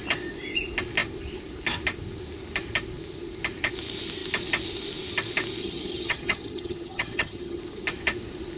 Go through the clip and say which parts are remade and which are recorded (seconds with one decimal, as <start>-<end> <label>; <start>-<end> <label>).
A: 0.0-5.6 recorded; 5.6-7.6 remade; 7.6-8.6 recorded